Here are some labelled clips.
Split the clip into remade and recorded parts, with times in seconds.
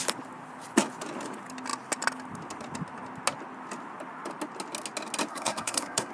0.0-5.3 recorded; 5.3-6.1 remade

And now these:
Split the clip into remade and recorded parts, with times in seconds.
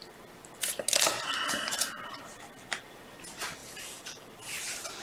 0.0-3.6 recorded; 3.6-4.3 remade; 4.3-5.0 recorded